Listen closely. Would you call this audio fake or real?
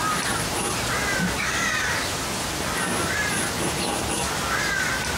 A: real